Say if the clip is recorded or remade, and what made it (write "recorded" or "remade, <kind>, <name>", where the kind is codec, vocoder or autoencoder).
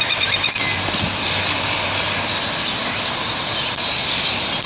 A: recorded